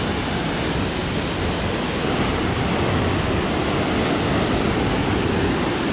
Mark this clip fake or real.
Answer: real